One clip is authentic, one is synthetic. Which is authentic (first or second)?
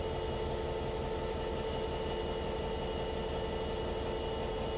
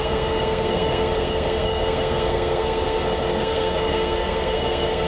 first